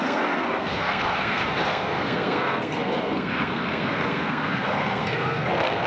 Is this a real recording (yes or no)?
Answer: no